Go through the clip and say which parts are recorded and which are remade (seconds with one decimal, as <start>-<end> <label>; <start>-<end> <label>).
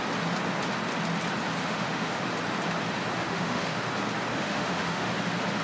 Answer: 0.0-1.6 recorded; 1.6-2.2 remade; 2.2-3.2 recorded; 3.2-3.8 remade; 3.8-4.3 recorded; 4.3-5.1 remade; 5.1-5.6 recorded